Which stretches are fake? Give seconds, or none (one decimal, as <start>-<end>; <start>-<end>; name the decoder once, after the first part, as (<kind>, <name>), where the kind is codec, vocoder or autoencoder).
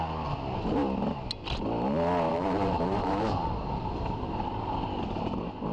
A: 2.3-4.4 (vocoder, BigVGAN v2)